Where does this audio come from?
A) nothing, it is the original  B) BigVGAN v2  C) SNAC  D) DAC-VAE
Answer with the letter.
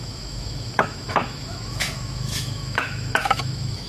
D